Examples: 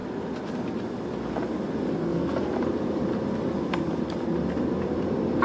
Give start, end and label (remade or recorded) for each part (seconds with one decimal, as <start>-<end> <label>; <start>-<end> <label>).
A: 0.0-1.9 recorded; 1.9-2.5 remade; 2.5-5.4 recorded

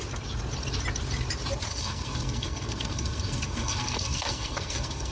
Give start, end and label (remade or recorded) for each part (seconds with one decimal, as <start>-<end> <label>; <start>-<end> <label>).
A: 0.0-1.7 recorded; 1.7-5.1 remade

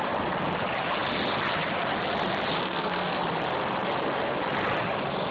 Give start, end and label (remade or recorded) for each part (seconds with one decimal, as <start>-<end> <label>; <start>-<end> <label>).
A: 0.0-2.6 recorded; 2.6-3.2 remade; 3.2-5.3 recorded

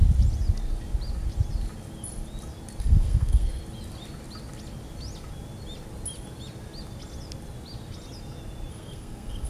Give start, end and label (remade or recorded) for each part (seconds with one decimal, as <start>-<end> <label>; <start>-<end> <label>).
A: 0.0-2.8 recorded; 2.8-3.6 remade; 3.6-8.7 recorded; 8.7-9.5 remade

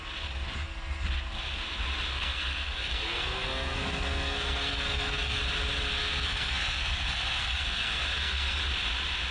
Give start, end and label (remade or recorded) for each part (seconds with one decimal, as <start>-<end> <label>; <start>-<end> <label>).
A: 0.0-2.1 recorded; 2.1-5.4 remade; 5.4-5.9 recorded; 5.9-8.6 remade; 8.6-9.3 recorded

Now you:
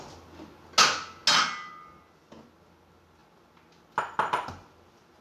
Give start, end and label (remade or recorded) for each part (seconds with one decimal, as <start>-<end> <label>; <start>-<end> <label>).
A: 0.0-5.2 recorded

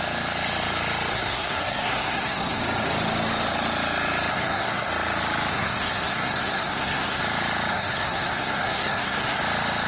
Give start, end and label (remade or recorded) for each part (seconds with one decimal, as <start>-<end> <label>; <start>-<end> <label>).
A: 0.0-1.1 recorded; 1.1-2.6 remade; 2.6-4.3 recorded; 4.3-4.9 remade; 4.9-5.5 recorded; 5.5-7.2 remade; 7.2-7.7 recorded; 7.7-9.4 remade; 9.4-9.9 recorded

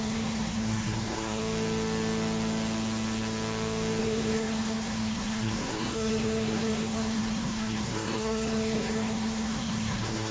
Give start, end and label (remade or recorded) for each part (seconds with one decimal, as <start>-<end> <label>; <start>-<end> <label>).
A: 0.0-1.4 remade; 1.4-4.0 recorded; 4.0-10.3 remade